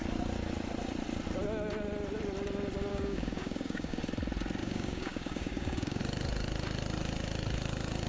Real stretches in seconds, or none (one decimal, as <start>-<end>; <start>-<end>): 0.0-2.9; 4.0-4.6; 6.0-8.1